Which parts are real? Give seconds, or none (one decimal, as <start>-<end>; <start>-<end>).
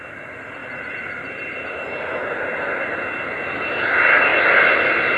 0.0-5.2